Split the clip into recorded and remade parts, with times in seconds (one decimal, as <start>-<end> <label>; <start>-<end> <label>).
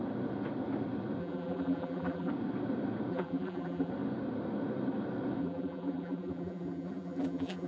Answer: 0.0-1.2 recorded; 1.2-2.3 remade; 2.3-3.1 recorded; 3.1-3.9 remade; 3.9-5.4 recorded; 5.4-7.7 remade